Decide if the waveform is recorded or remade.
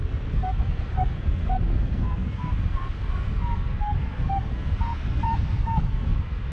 remade